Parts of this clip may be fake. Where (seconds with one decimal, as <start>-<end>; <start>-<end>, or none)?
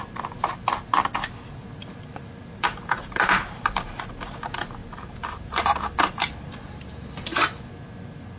1.8-4.1; 4.8-6.5